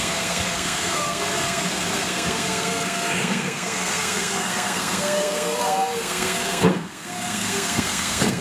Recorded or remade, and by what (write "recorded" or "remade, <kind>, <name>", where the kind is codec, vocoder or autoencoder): remade, codec, SNAC